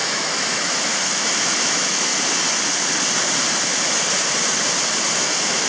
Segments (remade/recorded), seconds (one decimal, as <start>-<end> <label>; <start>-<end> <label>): 0.0-2.1 remade; 2.1-5.1 recorded; 5.1-5.7 remade